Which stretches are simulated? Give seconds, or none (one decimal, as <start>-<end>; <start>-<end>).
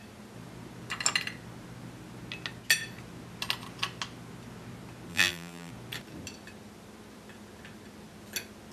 5.1-5.7